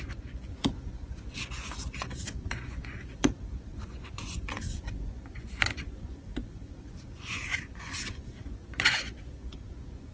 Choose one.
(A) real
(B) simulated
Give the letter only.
B